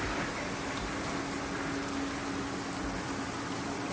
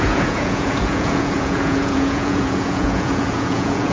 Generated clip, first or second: second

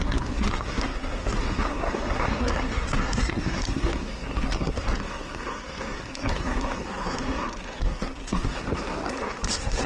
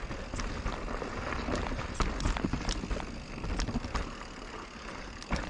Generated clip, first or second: first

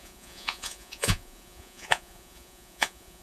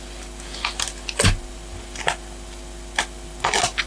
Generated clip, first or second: first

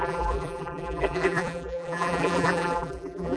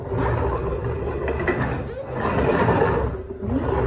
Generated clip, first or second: first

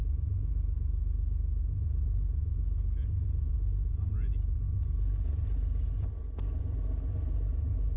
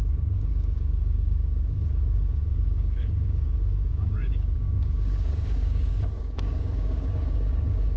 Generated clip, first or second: second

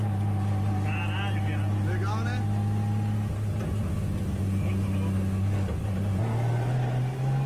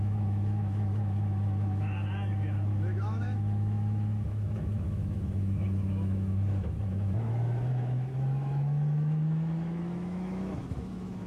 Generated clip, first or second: second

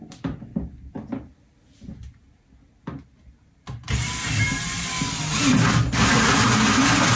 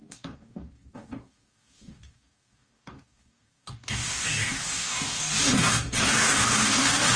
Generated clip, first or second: second